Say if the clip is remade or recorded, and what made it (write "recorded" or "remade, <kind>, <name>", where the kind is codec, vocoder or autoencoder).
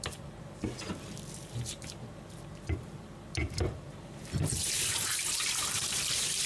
remade, vocoder, BigVGAN v2